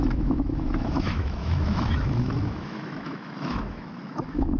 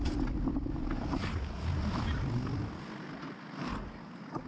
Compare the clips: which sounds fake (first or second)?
first